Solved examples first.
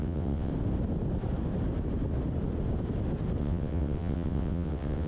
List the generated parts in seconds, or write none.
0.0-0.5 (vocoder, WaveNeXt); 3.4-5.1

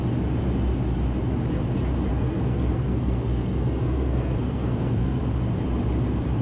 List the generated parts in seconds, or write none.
2.1-5.2 (codec, SNAC)

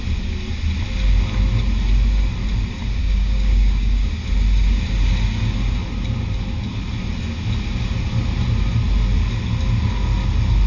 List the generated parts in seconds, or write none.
3.0-4.1 (codec, DAC)

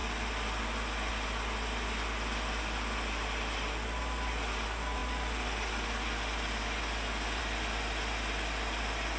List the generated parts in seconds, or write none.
none

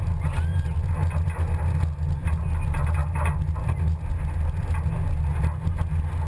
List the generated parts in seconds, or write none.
none

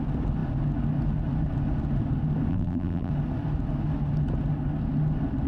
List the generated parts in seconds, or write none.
2.5-3.1 (vocoder, BigVGAN v2)